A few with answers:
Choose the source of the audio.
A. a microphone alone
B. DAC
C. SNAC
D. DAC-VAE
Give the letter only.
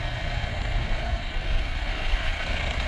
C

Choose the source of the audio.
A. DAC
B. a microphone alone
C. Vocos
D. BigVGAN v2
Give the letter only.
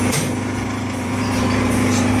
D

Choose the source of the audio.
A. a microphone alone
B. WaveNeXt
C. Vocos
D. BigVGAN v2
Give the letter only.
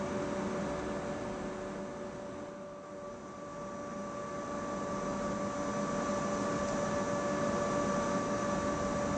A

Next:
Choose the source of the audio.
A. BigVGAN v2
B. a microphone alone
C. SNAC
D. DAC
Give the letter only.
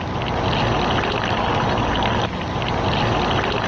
B